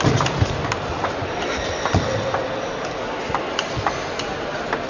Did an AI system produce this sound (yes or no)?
no